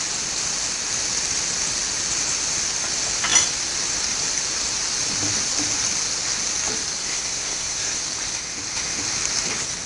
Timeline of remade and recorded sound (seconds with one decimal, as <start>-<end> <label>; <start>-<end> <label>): 0.0-7.0 recorded; 7.0-8.0 remade; 8.0-9.9 recorded